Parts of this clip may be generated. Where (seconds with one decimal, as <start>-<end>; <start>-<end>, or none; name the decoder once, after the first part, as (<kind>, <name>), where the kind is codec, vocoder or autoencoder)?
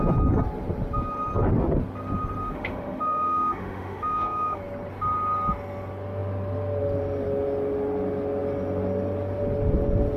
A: 2.4-4.6 (autoencoder, DAC-VAE)